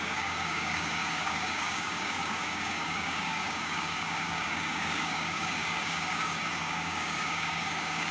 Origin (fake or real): fake